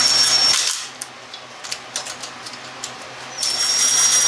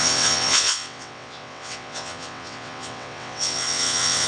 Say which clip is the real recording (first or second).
first